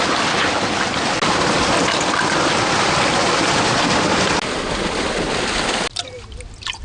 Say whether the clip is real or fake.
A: real